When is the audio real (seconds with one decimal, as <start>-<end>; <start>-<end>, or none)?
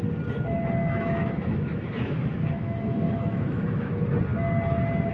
0.0-0.8; 3.9-5.1